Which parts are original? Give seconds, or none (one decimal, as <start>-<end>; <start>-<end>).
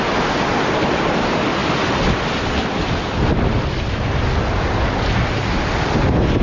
0.0-6.4